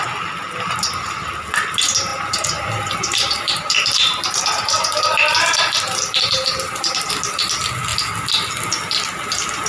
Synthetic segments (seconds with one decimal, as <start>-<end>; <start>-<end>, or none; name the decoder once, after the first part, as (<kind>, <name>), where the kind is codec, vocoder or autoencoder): 2.1-7.1 (vocoder, BigVGAN v2)